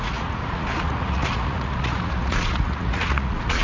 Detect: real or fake fake